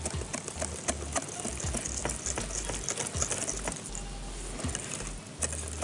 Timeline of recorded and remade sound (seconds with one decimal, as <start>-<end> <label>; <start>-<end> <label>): 0.0-5.8 recorded